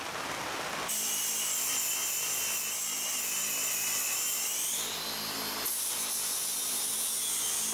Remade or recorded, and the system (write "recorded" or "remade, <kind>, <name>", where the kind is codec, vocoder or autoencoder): recorded